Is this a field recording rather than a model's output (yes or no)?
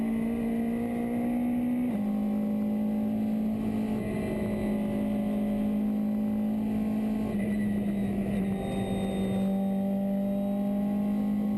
yes